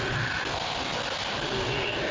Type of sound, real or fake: real